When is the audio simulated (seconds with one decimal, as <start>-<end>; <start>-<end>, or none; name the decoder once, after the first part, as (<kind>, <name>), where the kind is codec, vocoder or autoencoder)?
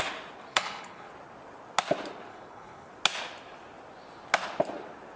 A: 0.5-1.1 (codec, HILCodec); 2.3-2.9